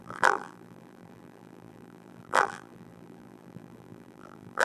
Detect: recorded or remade remade